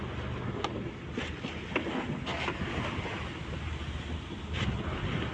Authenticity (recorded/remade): recorded